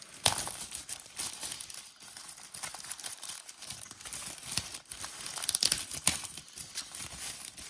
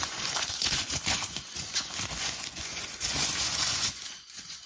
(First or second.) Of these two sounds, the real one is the first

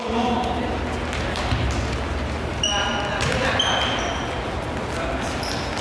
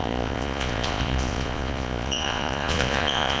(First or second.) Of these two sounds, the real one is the first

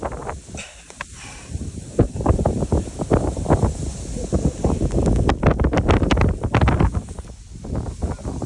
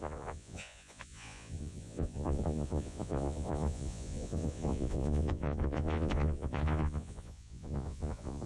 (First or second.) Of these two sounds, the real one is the first